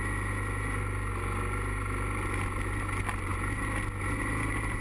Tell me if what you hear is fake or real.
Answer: real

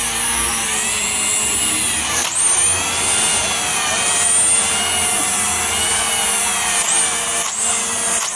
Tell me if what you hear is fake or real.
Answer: real